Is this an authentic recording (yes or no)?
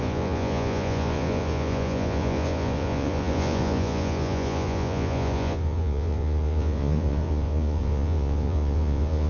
no